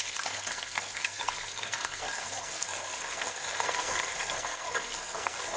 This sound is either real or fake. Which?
fake